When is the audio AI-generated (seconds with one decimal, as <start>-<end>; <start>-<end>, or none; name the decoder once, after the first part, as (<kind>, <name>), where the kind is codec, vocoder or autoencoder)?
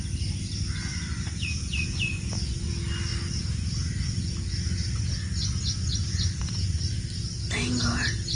0.9-2.7 (vocoder, Vocos); 6.0-6.8